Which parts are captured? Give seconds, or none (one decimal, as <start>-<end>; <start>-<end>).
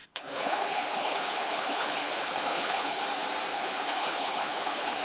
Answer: 3.0-3.5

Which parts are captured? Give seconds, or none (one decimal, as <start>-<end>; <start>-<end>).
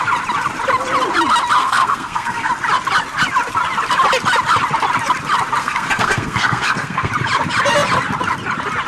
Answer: 0.0-1.6; 2.5-5.6; 7.1-8.9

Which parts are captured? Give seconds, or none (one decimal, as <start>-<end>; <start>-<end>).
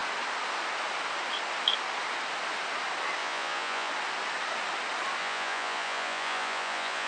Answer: 0.0-3.2; 3.9-5.2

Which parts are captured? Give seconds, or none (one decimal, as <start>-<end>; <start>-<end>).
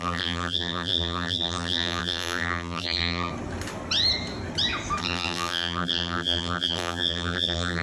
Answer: 3.3-5.0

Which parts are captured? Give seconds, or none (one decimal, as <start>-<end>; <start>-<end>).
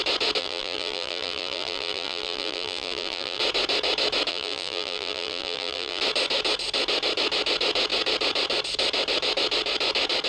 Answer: 0.0-0.4; 3.4-4.3; 6.0-10.3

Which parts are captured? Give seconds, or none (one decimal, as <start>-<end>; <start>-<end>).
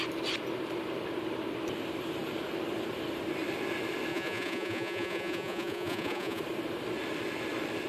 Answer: 0.0-4.1; 6.4-7.9